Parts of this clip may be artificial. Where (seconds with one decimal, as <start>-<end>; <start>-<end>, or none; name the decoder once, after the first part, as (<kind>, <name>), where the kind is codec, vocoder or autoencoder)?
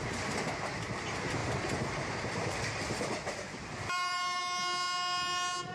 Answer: 1.4-4.4 (vocoder, BigVGAN v2)